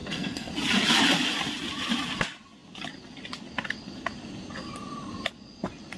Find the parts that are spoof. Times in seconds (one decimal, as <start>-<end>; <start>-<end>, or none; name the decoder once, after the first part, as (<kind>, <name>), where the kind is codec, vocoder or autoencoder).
0.0-0.5 (codec, SNAC)